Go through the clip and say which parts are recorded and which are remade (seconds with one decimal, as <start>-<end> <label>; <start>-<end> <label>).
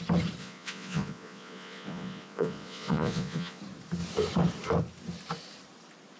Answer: 0.0-0.4 recorded; 0.4-3.6 remade; 3.6-6.2 recorded